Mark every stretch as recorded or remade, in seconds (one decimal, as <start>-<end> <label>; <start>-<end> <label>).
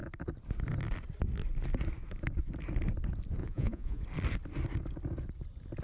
0.0-3.4 recorded; 3.4-4.0 remade; 4.0-5.8 recorded